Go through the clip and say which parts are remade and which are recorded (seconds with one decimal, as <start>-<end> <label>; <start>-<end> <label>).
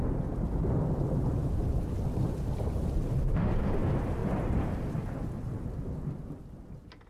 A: 0.0-7.1 recorded